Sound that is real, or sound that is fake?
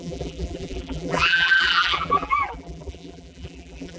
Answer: fake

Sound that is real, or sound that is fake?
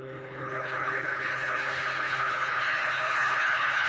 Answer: fake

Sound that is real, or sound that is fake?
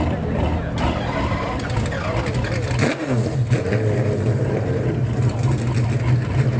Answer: real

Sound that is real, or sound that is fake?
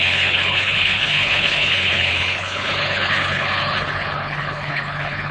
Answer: fake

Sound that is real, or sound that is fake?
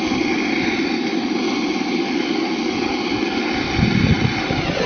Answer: real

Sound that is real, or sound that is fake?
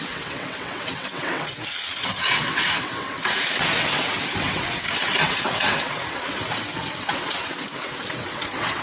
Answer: fake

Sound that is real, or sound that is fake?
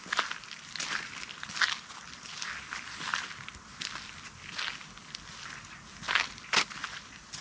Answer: real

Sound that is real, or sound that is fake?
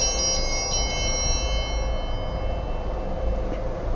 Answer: real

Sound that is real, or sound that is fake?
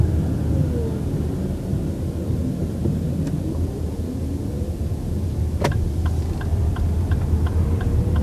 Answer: real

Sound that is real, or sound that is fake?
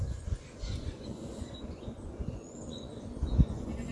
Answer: fake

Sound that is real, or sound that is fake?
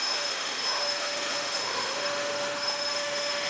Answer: fake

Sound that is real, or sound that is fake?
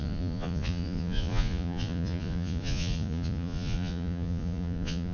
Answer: fake